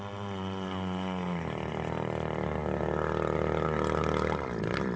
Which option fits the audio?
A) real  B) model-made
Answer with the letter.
A